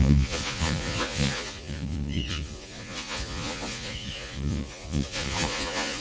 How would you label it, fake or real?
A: fake